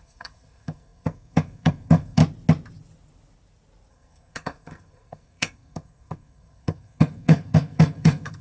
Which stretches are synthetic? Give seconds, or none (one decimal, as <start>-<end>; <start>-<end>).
0.0-2.2; 3.9-8.4